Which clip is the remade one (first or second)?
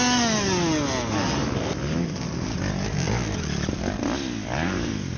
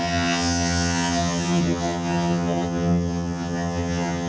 second